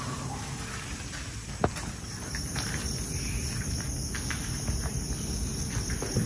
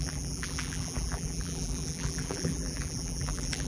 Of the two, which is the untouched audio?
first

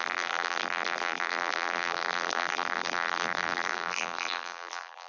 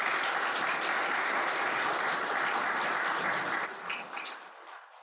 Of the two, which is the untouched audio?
second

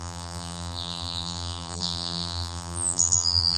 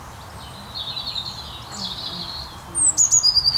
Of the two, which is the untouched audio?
second